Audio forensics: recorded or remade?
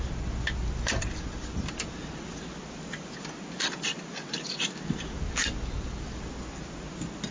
recorded